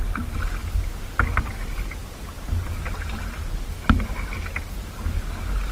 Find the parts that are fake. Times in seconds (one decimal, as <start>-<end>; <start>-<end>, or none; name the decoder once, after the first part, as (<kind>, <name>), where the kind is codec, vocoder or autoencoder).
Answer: none